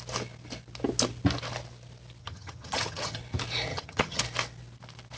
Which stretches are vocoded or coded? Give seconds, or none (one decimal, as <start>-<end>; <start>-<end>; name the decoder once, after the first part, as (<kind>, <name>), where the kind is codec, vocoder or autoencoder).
2.2-3.2 (vocoder, HiFi-GAN); 3.7-4.2